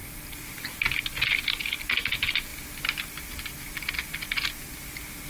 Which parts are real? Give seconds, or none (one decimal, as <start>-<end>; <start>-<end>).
0.0-5.3